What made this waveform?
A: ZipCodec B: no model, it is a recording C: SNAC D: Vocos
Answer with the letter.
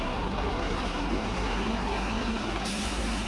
C